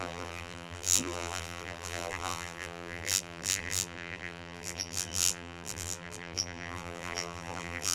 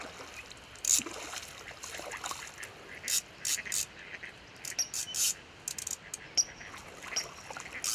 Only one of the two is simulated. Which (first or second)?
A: first